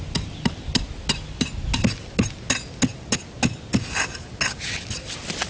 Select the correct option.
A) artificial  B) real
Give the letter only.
B